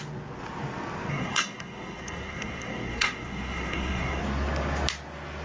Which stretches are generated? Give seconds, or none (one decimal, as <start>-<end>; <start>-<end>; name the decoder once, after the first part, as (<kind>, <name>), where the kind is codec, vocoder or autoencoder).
1.1-4.2 (codec, SNAC)